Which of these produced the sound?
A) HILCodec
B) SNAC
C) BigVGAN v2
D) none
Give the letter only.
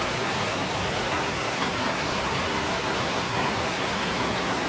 B